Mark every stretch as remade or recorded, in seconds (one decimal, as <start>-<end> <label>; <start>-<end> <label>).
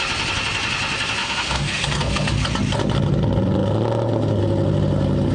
0.0-1.2 recorded; 1.2-2.3 remade; 2.3-5.3 recorded